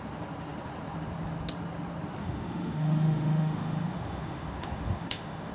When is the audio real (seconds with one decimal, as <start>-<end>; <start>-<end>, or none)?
0.0-2.2